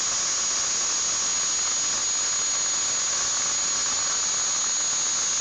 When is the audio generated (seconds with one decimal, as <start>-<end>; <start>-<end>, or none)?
none